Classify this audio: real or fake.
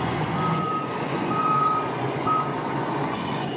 fake